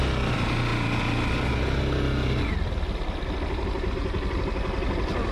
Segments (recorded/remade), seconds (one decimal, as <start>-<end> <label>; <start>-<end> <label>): 0.0-5.3 recorded